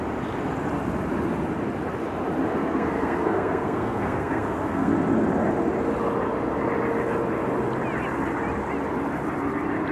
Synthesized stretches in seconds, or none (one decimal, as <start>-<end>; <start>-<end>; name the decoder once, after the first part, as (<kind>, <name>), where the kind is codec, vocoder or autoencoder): 2.5-4.9 (codec, SNAC)